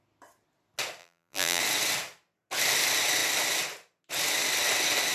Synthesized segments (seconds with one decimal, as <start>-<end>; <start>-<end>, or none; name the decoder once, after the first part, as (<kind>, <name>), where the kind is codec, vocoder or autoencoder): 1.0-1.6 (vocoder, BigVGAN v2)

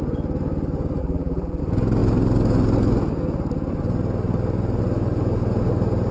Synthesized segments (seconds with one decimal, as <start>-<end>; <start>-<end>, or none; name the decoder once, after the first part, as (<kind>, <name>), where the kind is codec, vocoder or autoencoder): 1.0-1.6 (vocoder, BigVGAN v2)

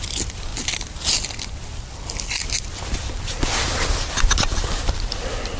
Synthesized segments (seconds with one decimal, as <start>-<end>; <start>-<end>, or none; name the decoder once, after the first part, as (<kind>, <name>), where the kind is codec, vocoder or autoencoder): none

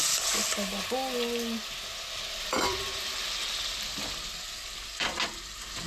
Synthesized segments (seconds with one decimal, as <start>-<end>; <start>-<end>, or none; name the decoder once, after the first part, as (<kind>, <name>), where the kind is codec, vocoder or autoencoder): 1.6-3.4 (vocoder, BigVGAN v2)